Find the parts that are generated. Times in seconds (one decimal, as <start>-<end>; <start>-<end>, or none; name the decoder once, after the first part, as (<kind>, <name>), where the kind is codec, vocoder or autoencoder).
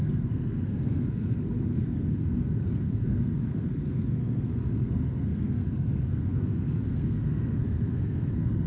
0.0-8.7 (codec, SNAC)